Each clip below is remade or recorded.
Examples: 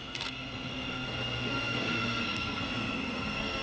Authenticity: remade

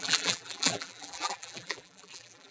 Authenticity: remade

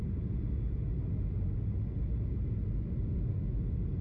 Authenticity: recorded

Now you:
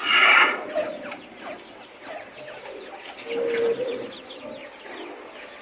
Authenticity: remade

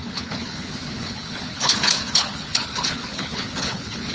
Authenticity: remade